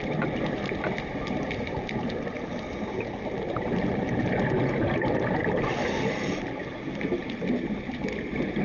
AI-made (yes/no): no